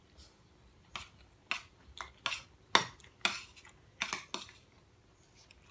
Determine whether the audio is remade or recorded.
recorded